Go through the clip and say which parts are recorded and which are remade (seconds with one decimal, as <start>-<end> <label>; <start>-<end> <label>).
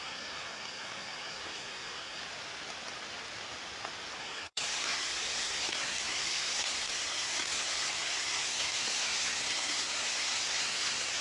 0.0-2.2 remade; 2.2-4.2 recorded; 4.2-11.2 remade